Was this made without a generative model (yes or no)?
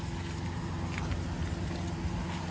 yes